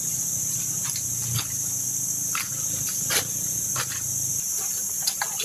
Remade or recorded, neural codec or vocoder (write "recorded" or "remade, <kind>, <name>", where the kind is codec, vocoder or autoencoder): recorded